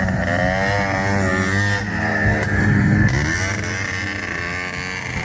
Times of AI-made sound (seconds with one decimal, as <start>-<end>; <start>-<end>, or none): none